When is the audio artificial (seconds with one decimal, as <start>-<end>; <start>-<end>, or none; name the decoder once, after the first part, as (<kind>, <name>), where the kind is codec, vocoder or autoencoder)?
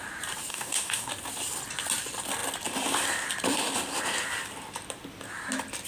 0.5-1.1 (codec, DAC)